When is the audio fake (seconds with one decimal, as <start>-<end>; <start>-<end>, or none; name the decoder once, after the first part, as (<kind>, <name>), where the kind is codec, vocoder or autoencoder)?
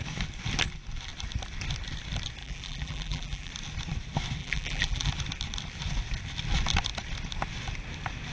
2.4-3.5 (vocoder, BigVGAN v2); 4.4-5.1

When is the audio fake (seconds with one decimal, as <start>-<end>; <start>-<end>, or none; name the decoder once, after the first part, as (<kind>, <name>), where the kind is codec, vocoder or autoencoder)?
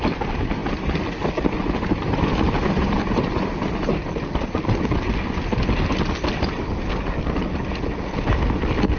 none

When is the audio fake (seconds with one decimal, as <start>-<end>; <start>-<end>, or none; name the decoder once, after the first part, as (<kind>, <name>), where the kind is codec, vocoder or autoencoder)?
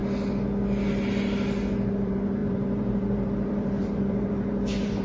1.9-5.0 (vocoder, BigVGAN v2)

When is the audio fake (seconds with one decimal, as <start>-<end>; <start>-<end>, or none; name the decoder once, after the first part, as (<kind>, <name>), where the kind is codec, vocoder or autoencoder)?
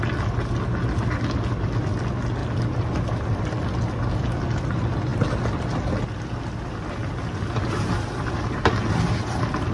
none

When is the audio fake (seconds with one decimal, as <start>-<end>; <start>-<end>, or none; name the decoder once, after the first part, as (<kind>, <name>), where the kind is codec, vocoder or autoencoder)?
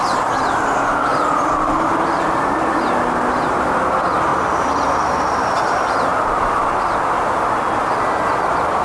1.1-1.9 (vocoder, BigVGAN v2); 4.3-4.9; 6.1-7.2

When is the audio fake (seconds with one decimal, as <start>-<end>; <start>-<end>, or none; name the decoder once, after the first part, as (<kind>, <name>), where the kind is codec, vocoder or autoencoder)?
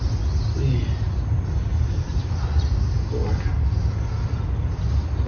1.7-4.1 (vocoder, BigVGAN v2)